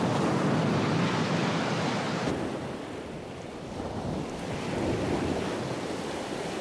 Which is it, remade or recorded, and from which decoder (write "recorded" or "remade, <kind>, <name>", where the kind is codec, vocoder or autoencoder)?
recorded